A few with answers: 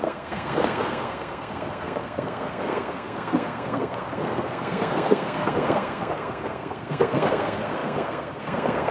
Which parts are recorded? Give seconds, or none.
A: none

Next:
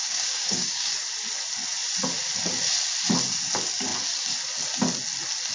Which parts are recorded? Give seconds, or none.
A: 0.9-5.5

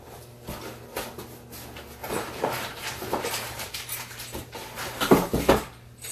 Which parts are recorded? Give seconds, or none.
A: 0.0-2.0; 5.5-6.1

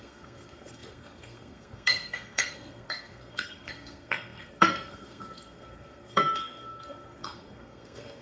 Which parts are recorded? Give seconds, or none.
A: none

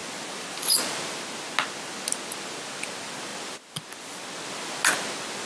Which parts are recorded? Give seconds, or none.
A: 0.0-5.5